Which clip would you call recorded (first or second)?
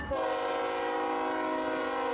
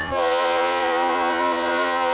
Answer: first